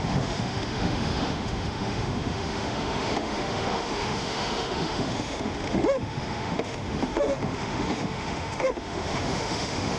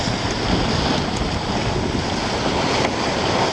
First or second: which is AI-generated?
first